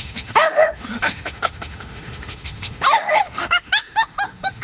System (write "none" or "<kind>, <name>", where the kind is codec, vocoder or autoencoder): autoencoder, DAC-VAE